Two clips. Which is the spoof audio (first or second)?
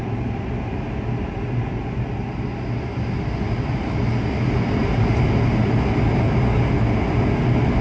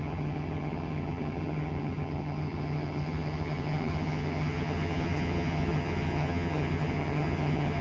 second